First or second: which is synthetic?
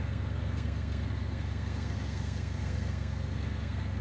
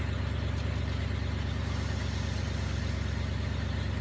first